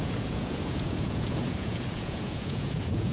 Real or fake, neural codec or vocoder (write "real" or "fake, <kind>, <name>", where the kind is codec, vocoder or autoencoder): fake, vocoder, Vocos